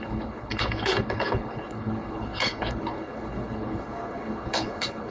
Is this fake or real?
fake